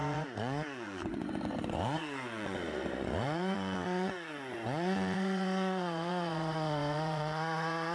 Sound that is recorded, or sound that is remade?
remade